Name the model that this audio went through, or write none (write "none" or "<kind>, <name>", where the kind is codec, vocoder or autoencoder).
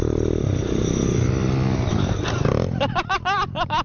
none